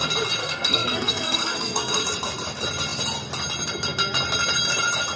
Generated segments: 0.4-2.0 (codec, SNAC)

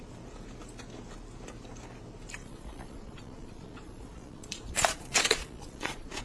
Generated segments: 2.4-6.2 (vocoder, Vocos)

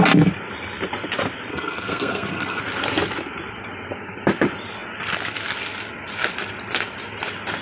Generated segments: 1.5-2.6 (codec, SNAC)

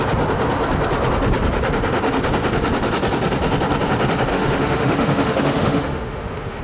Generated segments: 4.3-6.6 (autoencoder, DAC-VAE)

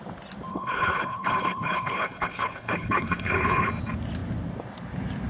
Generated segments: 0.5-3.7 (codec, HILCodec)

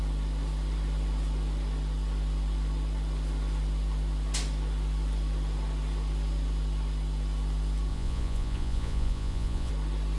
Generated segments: 7.9-9.7 (vocoder, Vocos)